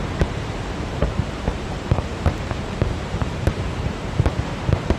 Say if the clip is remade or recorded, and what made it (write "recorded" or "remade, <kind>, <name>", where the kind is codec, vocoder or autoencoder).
remade, vocoder, BigVGAN v2